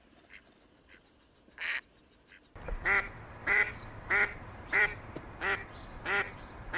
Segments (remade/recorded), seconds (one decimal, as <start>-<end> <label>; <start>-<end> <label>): 0.0-3.4 recorded; 3.4-4.8 remade; 4.8-6.8 recorded